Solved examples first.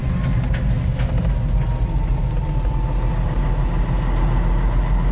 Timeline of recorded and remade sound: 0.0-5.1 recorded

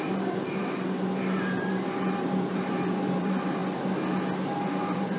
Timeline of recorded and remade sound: 0.0-0.6 remade; 0.6-1.4 recorded; 1.4-3.6 remade; 3.6-4.6 recorded; 4.6-5.2 remade

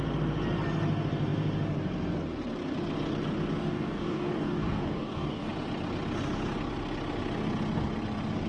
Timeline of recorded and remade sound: 0.0-3.6 recorded; 3.6-5.5 remade; 5.5-8.5 recorded

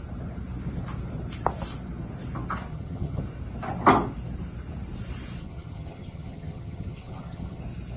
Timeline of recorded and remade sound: 0.0-2.7 recorded; 2.7-3.2 remade; 3.2-5.4 recorded; 5.4-7.6 remade; 7.6-8.0 recorded

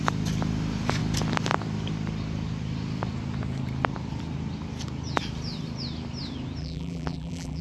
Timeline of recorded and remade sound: 0.0-6.6 recorded; 6.6-7.6 remade